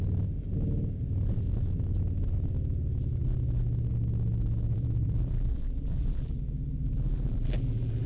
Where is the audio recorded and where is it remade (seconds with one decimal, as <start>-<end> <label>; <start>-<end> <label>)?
0.0-4.7 recorded; 4.7-8.1 remade